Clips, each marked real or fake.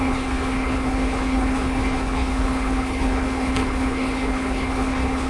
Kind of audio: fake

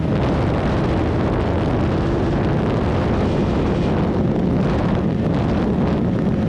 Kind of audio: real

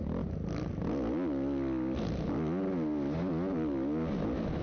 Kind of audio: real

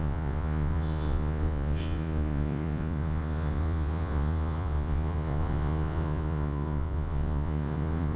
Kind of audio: fake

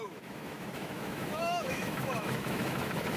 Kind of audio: fake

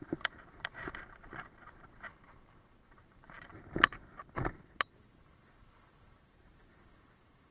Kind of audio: real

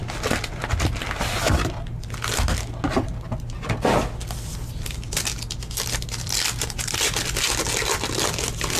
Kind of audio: real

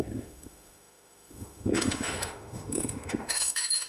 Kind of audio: fake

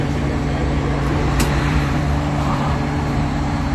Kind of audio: fake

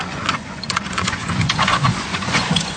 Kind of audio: fake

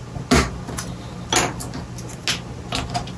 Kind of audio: real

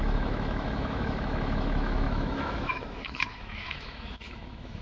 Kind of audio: fake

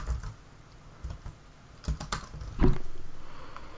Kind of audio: real